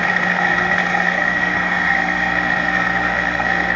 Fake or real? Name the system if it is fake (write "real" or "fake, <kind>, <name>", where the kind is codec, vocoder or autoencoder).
fake, codec, SNAC